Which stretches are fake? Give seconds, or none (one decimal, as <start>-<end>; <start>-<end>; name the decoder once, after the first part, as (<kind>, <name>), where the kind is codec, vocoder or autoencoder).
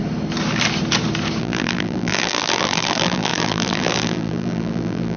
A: 1.4-5.2 (vocoder, BigVGAN v2)